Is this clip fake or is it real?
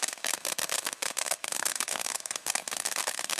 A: fake